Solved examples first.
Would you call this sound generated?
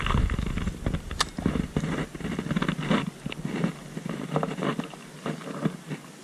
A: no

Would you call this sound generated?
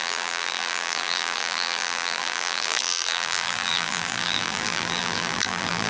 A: yes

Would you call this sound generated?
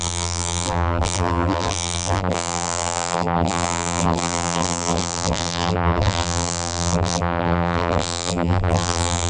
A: yes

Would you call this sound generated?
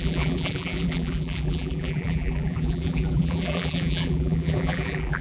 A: yes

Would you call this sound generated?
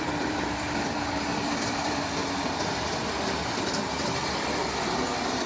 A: yes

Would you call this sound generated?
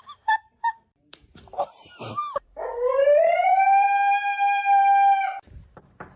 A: yes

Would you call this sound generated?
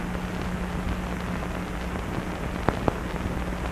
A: no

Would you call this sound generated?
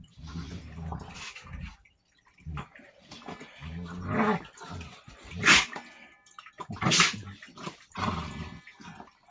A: no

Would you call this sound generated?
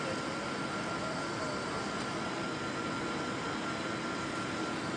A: yes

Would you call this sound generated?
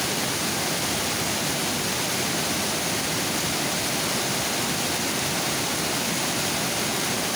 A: no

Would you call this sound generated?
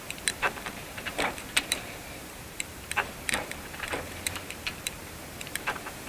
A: yes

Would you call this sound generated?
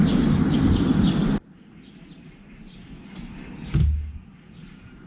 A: no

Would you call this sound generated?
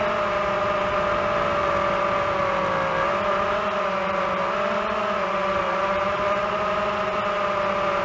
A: no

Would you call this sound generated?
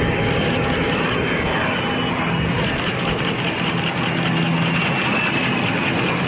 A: no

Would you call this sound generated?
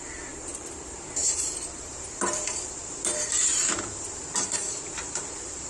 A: yes